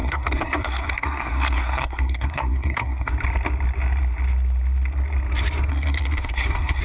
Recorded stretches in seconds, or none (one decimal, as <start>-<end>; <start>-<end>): 3.1-5.7